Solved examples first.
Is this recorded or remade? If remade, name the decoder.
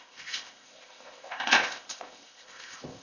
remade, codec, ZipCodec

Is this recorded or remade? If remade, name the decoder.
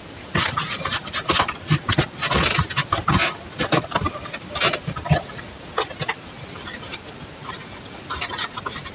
recorded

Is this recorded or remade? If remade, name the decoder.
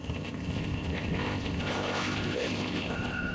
remade, codec, ZipCodec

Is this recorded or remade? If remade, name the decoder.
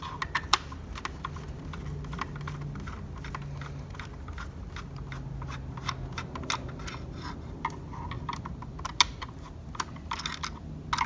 recorded